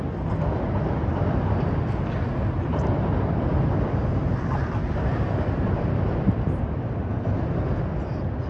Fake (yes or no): no